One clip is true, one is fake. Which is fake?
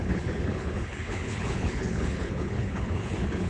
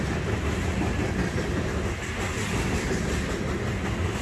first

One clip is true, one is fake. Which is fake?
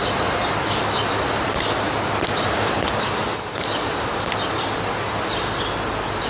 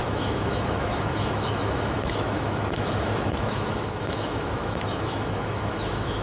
second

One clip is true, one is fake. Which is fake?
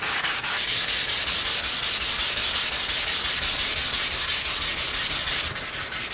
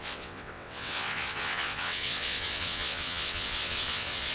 second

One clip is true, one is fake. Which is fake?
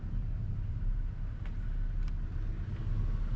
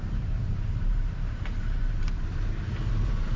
second